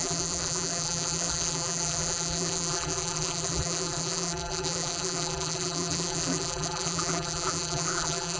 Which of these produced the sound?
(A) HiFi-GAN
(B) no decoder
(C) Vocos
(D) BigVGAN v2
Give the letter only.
D